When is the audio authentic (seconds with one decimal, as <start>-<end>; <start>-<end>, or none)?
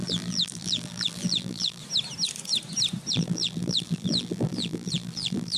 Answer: 1.8-3.1